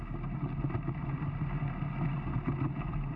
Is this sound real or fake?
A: real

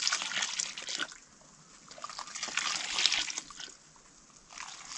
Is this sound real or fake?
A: real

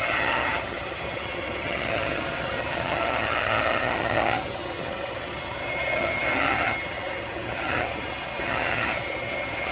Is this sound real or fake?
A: fake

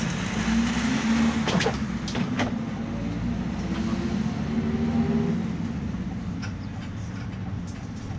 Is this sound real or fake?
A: real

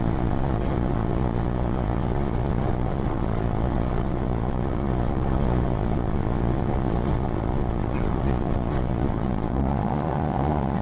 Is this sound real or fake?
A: fake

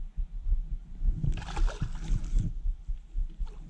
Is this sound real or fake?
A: real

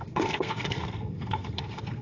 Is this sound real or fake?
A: fake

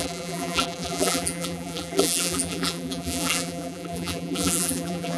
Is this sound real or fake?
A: fake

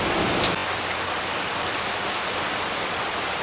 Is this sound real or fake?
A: real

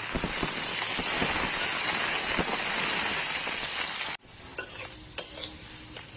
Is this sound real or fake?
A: real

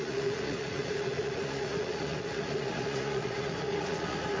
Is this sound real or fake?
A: fake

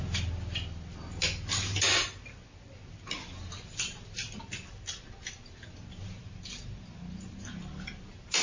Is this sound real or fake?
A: real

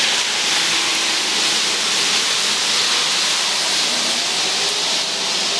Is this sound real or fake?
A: real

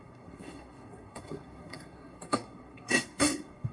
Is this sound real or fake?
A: fake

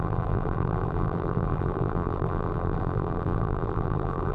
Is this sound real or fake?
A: fake